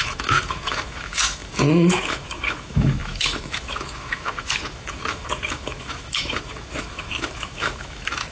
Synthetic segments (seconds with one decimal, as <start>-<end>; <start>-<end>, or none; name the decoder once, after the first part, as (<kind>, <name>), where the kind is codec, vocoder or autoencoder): 0.0-8.3 (autoencoder, DAC-VAE)